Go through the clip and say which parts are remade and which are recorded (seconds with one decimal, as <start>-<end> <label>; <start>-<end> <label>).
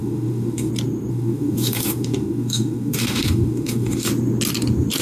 0.0-0.7 remade; 0.7-1.1 recorded; 1.1-4.1 remade; 4.1-5.0 recorded